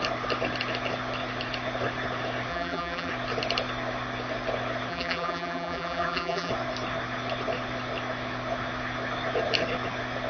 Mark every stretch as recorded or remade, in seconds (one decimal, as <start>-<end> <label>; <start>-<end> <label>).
0.0-2.5 recorded; 2.5-3.1 remade; 3.1-4.9 recorded; 4.9-6.5 remade; 6.5-10.3 recorded